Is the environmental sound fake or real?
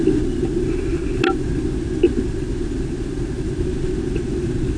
real